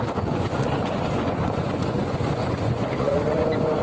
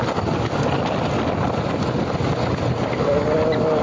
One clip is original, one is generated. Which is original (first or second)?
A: second